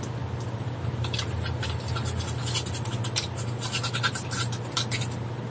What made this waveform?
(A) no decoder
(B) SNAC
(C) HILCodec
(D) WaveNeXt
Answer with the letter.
A